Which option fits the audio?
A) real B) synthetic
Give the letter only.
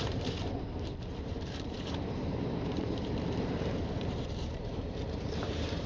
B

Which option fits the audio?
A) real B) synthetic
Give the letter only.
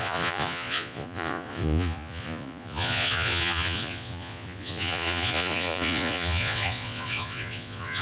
B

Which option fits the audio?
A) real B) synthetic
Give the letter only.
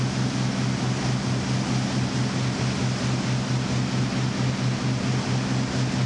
A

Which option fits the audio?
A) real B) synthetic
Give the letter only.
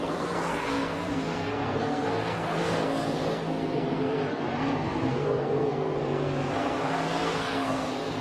B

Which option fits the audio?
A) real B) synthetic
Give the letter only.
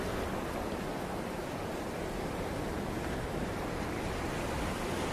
A